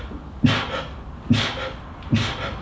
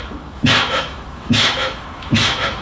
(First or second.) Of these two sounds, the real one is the first